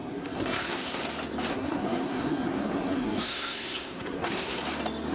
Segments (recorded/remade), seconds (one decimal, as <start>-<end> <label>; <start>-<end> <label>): 0.0-1.0 remade; 1.0-1.5 recorded; 1.5-4.6 remade; 4.6-5.1 recorded